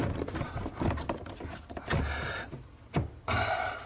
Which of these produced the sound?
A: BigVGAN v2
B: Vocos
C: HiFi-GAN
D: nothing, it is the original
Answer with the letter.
D